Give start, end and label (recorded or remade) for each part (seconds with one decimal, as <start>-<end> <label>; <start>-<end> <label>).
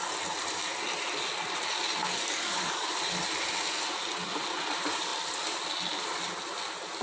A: 0.0-2.0 recorded; 2.0-2.9 remade; 2.9-7.0 recorded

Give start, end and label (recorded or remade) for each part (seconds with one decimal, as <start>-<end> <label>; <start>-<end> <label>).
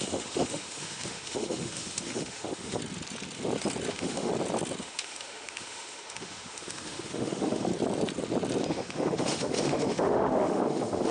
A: 0.0-2.8 remade; 2.8-3.9 recorded; 3.9-4.3 remade; 4.3-4.8 recorded; 4.8-7.7 remade; 7.7-8.7 recorded; 8.7-11.1 remade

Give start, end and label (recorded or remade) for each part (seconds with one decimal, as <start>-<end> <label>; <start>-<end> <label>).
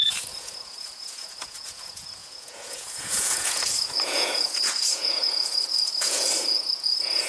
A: 0.0-7.3 remade